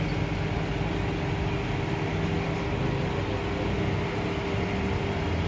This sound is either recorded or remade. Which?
recorded